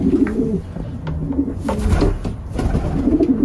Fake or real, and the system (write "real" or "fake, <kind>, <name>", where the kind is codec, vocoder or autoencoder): real